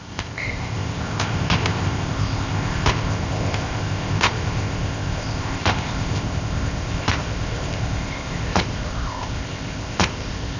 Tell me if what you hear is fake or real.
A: fake